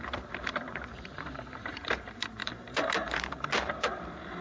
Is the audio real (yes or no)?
no